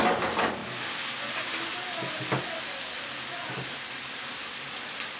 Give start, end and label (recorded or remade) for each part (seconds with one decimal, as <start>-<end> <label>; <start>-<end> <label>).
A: 0.0-5.2 recorded